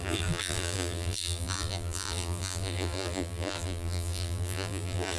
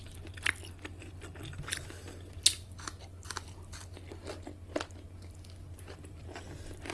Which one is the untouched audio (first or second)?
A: second